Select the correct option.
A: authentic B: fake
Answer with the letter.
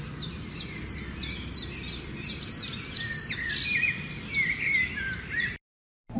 A